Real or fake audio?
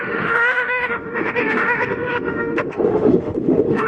fake